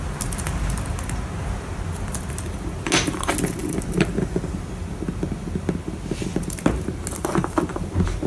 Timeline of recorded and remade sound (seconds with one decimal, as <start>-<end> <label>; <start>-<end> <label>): 0.0-3.6 recorded; 3.6-4.4 remade; 4.4-8.3 recorded